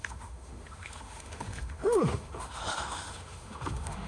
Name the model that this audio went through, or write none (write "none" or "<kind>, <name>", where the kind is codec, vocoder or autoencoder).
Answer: autoencoder, DAC-VAE